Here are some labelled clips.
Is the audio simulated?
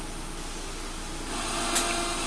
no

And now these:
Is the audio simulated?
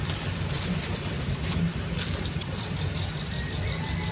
no